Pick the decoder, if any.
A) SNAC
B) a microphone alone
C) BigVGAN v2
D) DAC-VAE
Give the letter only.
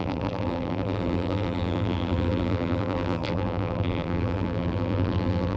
C